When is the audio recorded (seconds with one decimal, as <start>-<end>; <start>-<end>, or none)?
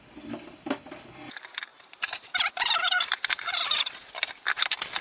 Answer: 0.0-1.7; 3.8-5.0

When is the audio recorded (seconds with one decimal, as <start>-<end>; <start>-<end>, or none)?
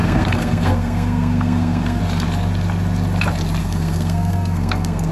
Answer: 2.0-3.6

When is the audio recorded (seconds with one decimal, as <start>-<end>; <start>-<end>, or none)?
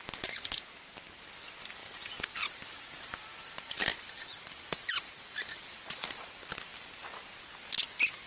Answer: 0.0-1.8; 6.3-8.3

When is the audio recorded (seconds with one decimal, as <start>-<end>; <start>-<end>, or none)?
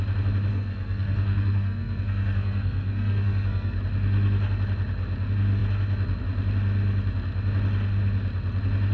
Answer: 0.0-0.5; 3.8-8.9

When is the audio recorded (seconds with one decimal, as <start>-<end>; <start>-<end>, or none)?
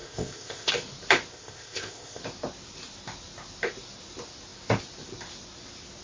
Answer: 0.7-1.3; 2.2-6.0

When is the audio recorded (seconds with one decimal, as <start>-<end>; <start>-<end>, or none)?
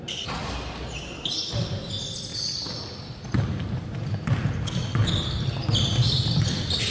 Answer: 0.0-6.9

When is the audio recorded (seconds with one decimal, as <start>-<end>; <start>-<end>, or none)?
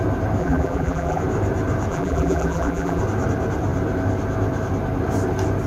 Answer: 0.0-0.4; 1.2-1.9; 3.0-5.7